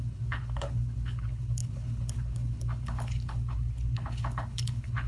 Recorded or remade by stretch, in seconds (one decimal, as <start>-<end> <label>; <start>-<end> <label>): 0.0-5.1 remade